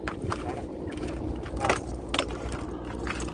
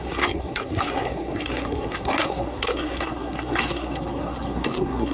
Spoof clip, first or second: second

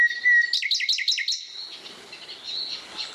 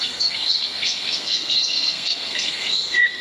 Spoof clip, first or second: second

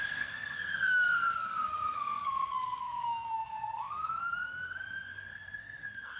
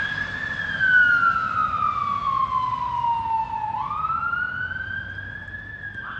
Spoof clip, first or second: first